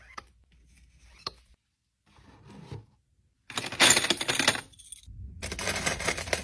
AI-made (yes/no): no